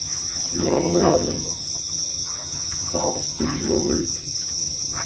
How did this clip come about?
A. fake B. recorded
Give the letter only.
A